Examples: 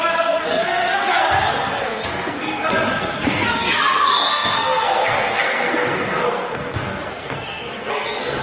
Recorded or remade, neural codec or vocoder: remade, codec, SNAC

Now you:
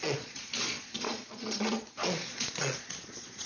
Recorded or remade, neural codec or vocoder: remade, vocoder, Vocos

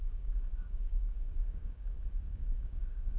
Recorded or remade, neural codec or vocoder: remade, codec, DAC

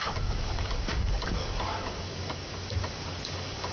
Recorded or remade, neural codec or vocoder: remade, codec, DAC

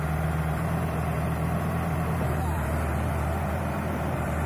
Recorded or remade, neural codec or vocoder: remade, vocoder, BigVGAN v2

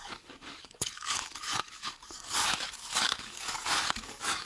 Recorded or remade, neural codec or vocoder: remade, codec, DAC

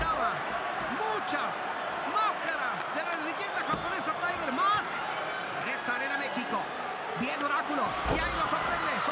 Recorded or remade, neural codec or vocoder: recorded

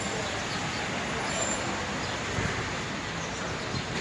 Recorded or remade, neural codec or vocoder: recorded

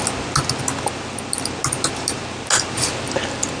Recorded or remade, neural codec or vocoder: recorded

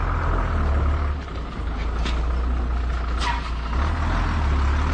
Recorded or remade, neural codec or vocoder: recorded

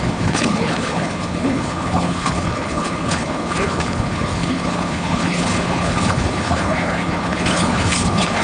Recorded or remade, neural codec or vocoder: remade, codec, HILCodec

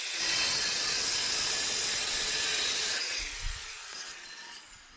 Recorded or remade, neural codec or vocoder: remade, vocoder, WaveNeXt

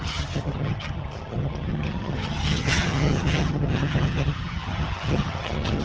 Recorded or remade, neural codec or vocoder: remade, vocoder, HiFi-GAN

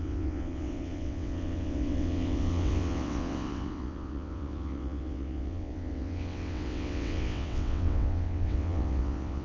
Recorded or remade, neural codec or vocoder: remade, vocoder, WaveNeXt